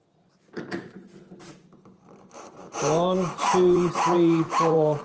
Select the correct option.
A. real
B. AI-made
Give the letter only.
B